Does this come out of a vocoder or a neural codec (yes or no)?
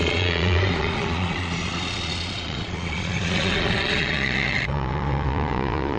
yes